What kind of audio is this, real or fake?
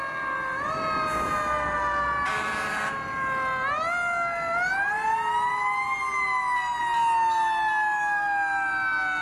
real